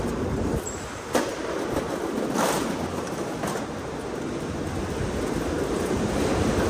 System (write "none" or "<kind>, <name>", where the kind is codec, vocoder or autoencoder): none